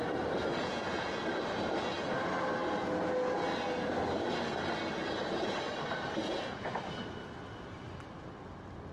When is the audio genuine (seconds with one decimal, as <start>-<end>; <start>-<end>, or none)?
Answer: 0.0-0.6; 1.2-6.2; 6.7-8.9

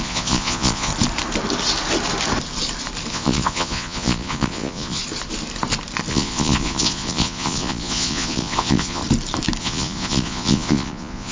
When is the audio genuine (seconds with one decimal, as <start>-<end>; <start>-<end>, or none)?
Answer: 0.9-3.1; 5.0-6.1; 9.0-9.6

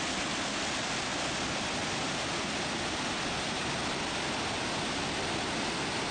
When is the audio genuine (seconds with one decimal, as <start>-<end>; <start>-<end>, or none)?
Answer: 0.0-6.1